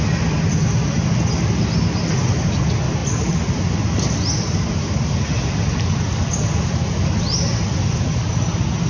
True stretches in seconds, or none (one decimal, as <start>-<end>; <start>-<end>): 0.0-8.9

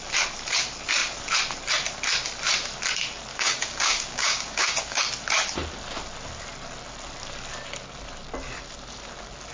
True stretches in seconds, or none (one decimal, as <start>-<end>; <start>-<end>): 0.0-3.3; 5.0-9.5

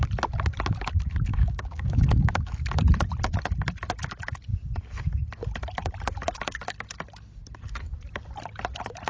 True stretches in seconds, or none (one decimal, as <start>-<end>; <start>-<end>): 0.0-1.3; 2.5-9.1